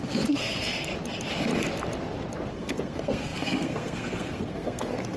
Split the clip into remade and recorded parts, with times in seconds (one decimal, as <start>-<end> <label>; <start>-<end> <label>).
0.0-0.9 remade; 0.9-2.5 recorded; 2.5-5.2 remade